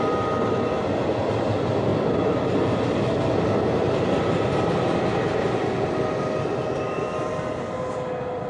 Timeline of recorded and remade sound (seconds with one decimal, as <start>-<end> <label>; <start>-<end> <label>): 0.0-8.5 recorded